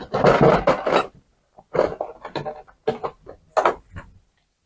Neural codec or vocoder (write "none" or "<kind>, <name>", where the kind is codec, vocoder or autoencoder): none